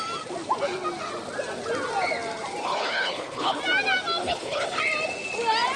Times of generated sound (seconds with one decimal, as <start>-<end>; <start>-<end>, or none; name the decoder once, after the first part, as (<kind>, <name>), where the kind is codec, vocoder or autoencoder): 2.6-3.6 (codec, HILCodec); 4.2-4.8

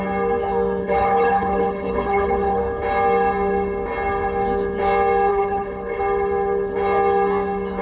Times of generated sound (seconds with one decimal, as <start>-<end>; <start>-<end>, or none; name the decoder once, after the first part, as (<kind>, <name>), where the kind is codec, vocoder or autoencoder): 0.8-2.6 (codec, HILCodec); 5.3-6.0

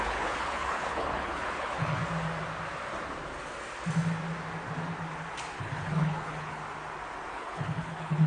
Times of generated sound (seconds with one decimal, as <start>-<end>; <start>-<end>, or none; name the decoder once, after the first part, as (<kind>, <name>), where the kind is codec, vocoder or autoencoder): 0.0-2.0 (codec, HILCodec); 5.6-6.6; 7.3-8.3

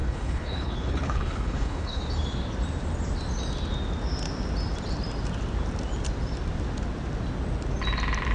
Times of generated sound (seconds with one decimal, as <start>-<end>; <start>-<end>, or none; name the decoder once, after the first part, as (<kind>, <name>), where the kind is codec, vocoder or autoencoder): 0.0-2.0 (codec, HILCodec)

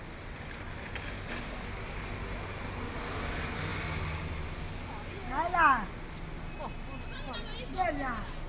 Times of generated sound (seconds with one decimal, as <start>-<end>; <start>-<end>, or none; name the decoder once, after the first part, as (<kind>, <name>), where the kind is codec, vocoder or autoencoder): none